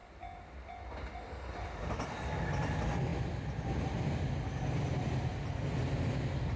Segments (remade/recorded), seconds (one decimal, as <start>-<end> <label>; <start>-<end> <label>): 0.0-6.6 recorded